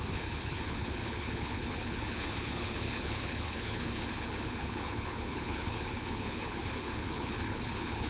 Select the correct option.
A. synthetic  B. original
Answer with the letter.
A